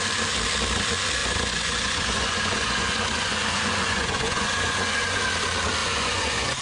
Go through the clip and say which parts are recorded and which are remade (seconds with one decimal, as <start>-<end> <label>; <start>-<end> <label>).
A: 0.0-1.2 recorded; 1.2-5.2 remade; 5.2-5.8 recorded; 5.8-6.6 remade